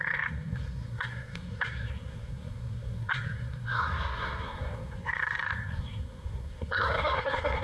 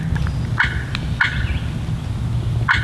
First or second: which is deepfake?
first